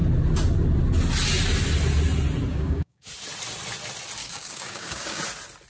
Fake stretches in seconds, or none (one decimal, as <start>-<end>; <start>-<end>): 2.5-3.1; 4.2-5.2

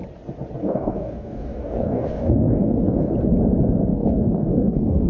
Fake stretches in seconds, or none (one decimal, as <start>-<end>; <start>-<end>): 0.6-3.1; 3.9-5.1

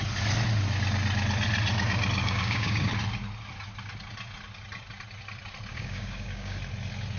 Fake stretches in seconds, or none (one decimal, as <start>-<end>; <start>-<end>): 2.2-2.9; 5.7-6.6

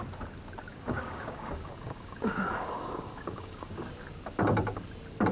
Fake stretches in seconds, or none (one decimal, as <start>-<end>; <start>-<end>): 0.7-3.9

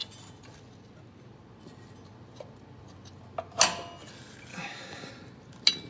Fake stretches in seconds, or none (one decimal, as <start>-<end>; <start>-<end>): 4.5-5.1

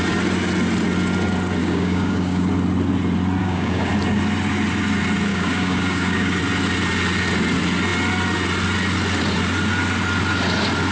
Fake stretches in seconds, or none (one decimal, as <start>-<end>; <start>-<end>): 1.6-2.5; 3.4-3.9; 5.3-6.4